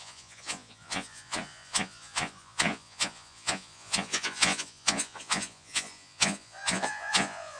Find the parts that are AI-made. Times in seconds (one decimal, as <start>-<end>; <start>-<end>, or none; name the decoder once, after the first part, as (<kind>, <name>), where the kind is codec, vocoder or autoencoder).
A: 0.0-7.6 (vocoder, Vocos)